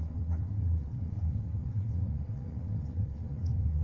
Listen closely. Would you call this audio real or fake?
fake